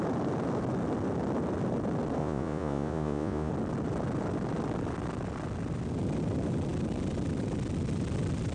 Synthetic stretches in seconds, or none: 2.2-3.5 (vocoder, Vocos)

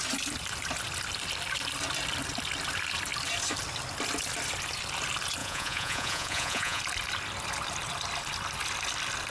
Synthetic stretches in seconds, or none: 5.4-6.8 (vocoder, Vocos)